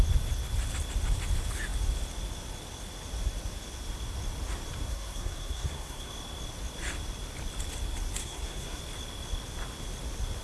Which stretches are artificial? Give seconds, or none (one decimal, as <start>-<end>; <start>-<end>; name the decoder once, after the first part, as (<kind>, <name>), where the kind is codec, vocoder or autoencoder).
4.9-6.1 (codec, SNAC); 8.2-8.8